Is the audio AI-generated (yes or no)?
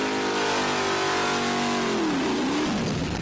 no